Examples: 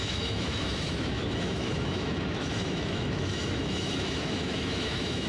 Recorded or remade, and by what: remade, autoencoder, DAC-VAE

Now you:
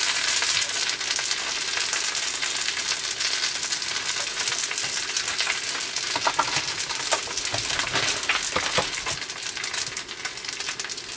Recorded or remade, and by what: recorded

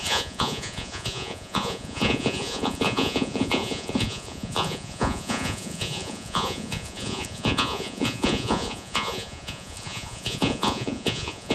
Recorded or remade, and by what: remade, vocoder, Vocos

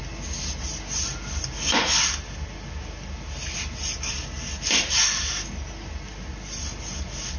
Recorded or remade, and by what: recorded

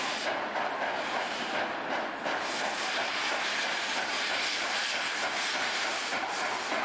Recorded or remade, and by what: remade, vocoder, BigVGAN v2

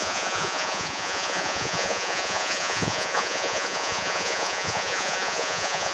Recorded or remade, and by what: remade, vocoder, Vocos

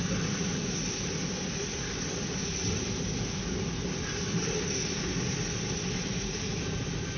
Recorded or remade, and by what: recorded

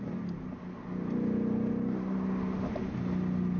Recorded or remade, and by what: recorded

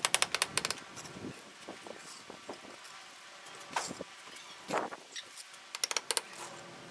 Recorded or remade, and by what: recorded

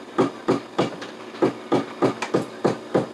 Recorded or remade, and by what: recorded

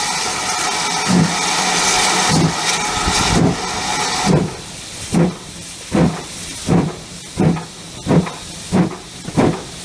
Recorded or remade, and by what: recorded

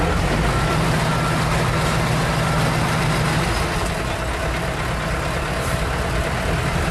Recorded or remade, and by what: recorded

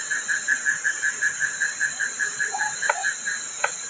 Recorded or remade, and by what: recorded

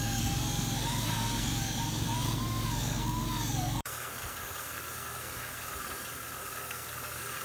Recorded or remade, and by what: remade, codec, SNAC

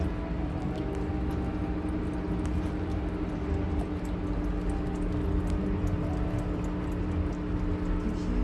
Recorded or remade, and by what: recorded